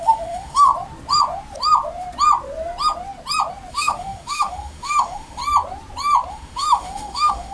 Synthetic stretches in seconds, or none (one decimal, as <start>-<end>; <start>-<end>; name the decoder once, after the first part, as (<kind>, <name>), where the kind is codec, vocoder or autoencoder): 0.0-0.7 (autoencoder, DAC-VAE); 3.7-5.4; 6.3-7.5